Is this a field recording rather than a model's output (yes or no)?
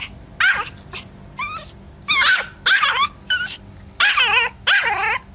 yes